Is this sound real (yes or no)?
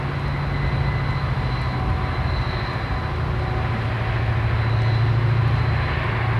yes